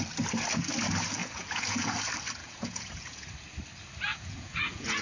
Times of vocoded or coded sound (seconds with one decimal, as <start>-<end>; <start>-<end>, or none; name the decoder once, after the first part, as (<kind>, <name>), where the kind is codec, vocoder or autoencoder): 1.2-2.0 (vocoder, Vocos); 2.4-3.3; 4.1-5.0